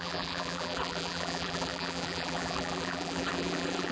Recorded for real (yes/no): no